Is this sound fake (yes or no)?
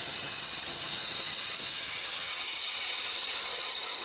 yes